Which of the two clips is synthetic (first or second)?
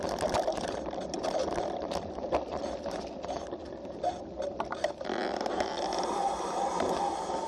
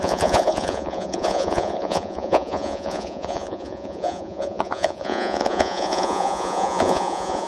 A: second